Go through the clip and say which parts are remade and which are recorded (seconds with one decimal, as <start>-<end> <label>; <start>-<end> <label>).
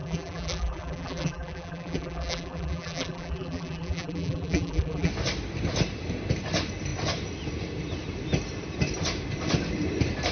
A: 0.0-5.1 remade; 5.1-10.3 recorded